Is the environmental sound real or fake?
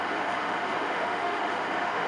fake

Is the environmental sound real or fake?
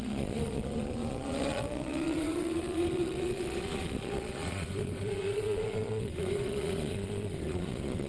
fake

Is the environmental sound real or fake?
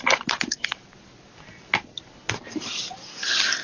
real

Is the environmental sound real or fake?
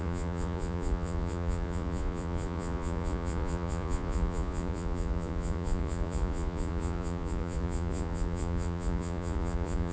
fake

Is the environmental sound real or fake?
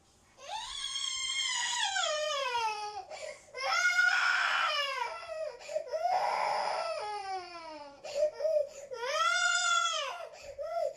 fake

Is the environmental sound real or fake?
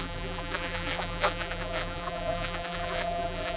fake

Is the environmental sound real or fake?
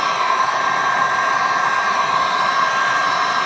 real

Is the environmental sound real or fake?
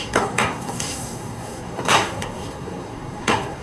fake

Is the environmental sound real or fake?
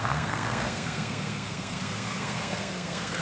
fake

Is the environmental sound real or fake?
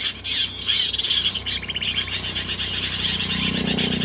real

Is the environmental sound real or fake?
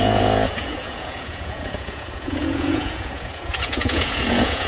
fake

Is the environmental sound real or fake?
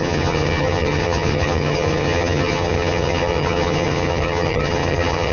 fake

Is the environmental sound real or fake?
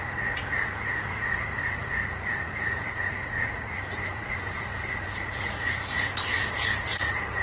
fake